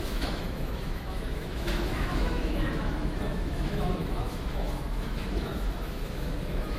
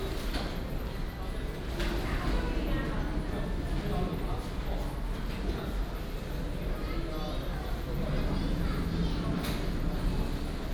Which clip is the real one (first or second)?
second